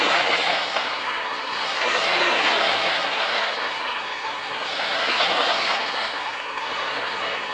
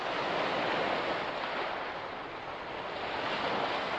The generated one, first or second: first